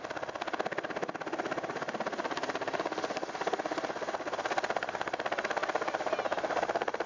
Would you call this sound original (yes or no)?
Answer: yes